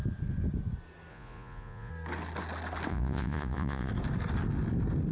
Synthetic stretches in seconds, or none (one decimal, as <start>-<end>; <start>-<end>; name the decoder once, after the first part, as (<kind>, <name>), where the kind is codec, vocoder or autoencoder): 1.1-1.9 (vocoder, Vocos); 2.9-3.9